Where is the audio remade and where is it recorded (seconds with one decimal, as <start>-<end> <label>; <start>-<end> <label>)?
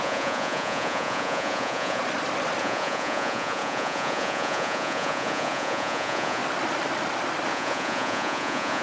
0.0-2.0 remade; 2.0-2.6 recorded; 2.6-6.4 remade; 6.4-7.5 recorded; 7.5-8.8 remade